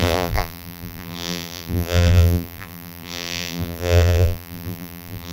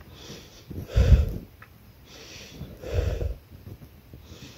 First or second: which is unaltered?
second